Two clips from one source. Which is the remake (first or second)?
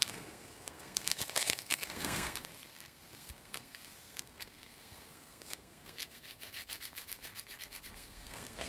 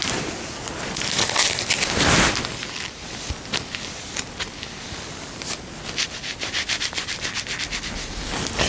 first